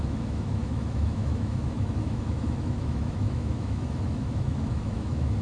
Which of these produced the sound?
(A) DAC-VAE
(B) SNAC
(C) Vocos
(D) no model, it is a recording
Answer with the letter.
A